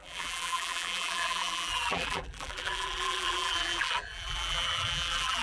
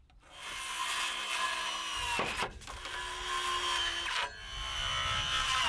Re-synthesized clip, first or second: first